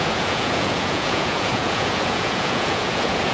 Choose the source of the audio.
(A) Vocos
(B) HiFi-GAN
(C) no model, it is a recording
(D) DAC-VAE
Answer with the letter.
A